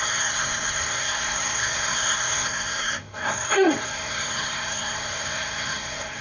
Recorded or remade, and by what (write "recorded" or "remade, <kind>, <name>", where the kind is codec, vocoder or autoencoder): remade, codec, SNAC